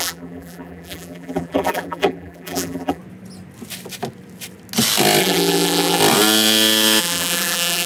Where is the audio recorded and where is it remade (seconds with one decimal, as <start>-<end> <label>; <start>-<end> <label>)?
0.0-3.0 remade; 3.0-5.2 recorded; 5.2-6.0 remade; 6.0-7.0 recorded; 7.0-7.9 remade